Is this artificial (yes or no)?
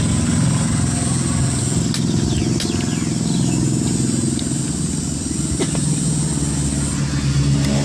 no